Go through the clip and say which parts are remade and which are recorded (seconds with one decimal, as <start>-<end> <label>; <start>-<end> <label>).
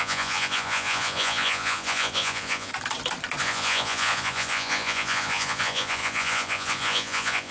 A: 0.0-2.7 remade; 2.7-3.4 recorded; 3.4-7.5 remade